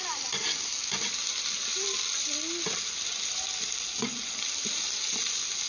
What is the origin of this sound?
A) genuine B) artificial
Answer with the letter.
A